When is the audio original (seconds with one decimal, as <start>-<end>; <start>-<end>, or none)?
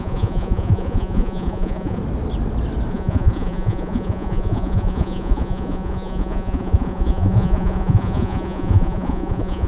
2.0-2.9